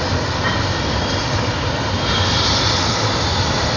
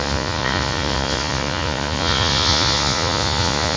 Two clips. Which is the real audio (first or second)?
first